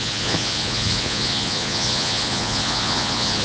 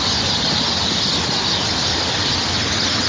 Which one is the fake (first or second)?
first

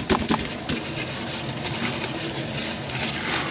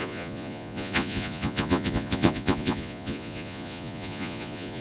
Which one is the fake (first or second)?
second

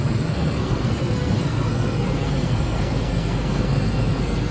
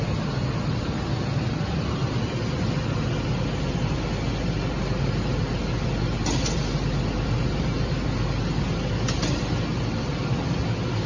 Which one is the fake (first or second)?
first